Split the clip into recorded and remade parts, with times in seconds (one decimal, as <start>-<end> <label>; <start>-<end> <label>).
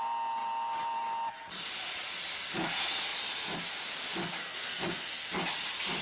0.0-4.4 recorded; 4.4-5.3 remade; 5.3-6.0 recorded